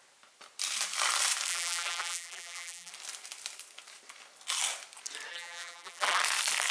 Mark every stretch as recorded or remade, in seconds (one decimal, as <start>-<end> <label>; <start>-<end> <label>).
0.0-1.5 recorded; 1.5-2.9 remade; 2.9-5.3 recorded; 5.3-6.2 remade; 6.2-6.7 recorded